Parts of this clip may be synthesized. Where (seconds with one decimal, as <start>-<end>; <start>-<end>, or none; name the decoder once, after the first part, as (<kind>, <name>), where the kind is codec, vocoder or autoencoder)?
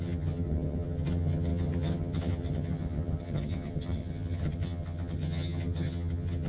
0.0-6.5 (vocoder, HiFi-GAN)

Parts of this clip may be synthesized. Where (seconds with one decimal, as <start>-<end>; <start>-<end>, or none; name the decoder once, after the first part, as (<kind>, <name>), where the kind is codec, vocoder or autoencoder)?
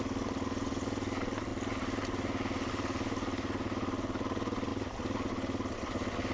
none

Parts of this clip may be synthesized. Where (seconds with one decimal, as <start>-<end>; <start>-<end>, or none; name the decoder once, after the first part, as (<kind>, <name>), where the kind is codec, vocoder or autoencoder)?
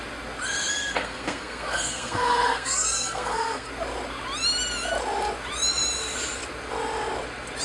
0.7-3.7 (codec, SNAC)